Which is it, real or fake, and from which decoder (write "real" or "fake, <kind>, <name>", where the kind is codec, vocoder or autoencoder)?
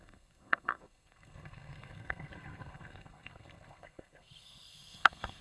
fake, codec, SNAC